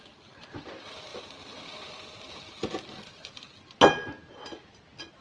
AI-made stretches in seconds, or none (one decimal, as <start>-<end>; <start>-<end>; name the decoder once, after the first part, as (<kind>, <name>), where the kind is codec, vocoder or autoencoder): none